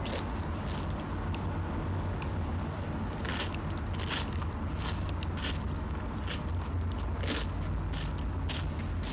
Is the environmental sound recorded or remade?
recorded